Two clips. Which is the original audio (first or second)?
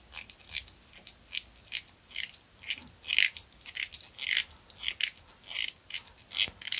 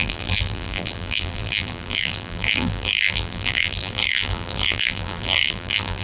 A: first